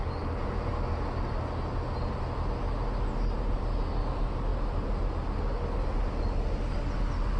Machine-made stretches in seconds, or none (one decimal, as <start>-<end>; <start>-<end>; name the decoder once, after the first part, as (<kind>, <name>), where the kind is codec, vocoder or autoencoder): none